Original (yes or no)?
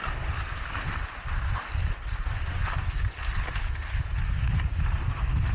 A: yes